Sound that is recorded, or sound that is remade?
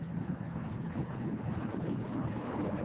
remade